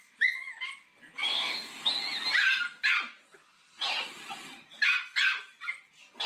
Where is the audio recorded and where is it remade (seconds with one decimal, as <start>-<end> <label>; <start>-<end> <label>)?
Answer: 0.0-1.3 recorded; 1.3-1.8 remade; 1.8-6.3 recorded